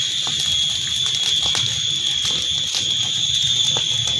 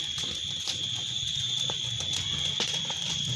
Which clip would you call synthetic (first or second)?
second